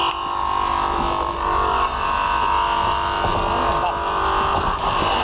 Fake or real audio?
real